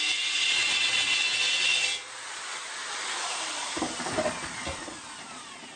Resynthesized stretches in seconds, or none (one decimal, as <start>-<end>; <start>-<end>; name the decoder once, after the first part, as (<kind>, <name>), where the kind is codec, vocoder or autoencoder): 2.8-4.8 (vocoder, BigVGAN v2)

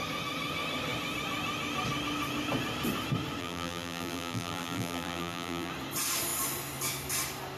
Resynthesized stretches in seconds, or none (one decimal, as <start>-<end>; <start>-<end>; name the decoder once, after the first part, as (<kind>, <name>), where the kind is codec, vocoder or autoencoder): 3.4-5.7 (vocoder, BigVGAN v2)

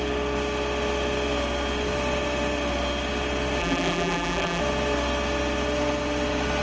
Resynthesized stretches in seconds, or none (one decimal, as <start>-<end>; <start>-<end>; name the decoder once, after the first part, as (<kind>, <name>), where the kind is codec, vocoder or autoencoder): 3.6-4.6 (vocoder, BigVGAN v2)

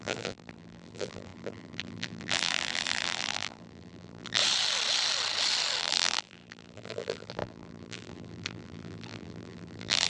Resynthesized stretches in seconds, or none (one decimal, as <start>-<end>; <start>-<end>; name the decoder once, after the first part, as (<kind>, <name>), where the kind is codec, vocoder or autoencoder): 0.0-4.4 (vocoder, BigVGAN v2); 5.8-10.1

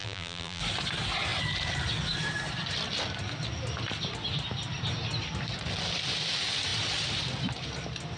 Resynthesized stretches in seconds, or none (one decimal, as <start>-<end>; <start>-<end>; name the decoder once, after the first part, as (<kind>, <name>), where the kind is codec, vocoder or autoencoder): 0.0-0.6 (vocoder, BigVGAN v2)

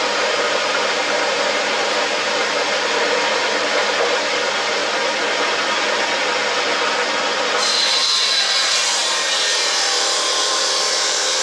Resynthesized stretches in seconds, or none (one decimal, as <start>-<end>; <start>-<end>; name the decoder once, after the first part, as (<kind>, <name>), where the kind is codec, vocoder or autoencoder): 0.0-4.8 (vocoder, BigVGAN v2); 7.4-11.4

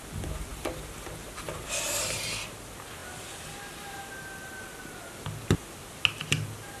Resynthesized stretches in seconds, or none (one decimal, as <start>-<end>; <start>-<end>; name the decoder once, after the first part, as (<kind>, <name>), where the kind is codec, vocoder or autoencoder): none